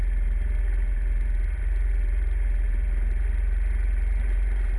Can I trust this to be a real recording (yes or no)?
no